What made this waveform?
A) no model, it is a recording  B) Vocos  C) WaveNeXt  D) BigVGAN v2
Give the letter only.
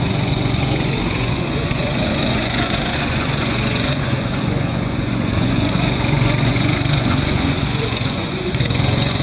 B